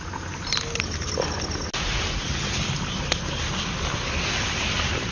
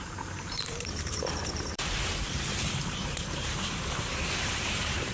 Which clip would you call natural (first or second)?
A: first